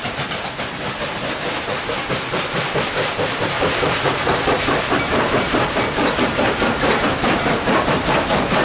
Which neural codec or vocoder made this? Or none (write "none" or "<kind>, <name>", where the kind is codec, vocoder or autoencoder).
vocoder, BigVGAN v2